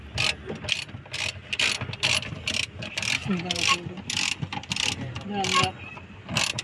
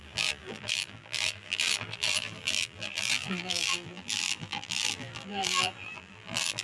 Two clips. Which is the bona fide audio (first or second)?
first